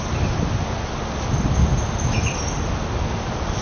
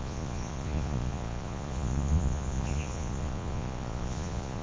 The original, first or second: first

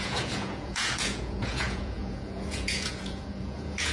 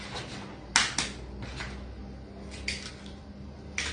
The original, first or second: second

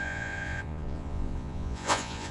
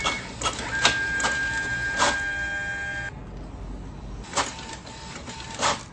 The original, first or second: second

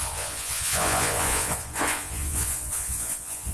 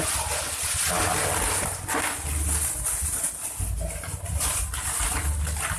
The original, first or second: second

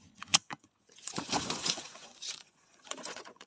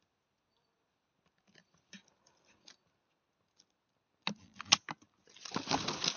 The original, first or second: second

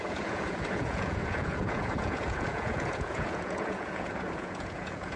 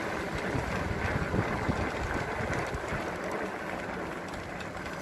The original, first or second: second